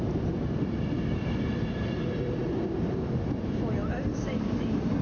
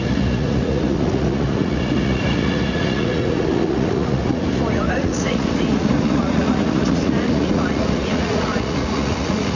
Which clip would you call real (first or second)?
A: first